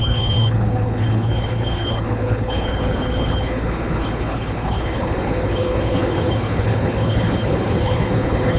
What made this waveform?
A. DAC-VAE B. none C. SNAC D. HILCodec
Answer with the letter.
D